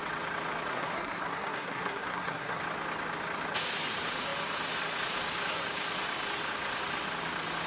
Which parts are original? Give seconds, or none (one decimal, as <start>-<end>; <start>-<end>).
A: 0.0-0.7; 2.6-7.7